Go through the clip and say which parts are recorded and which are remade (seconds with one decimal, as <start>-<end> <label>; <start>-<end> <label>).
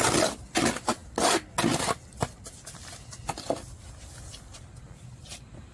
0.0-5.7 recorded